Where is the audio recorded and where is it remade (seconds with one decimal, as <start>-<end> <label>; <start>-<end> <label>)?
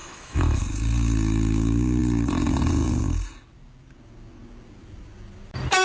0.0-0.6 remade; 0.6-5.8 recorded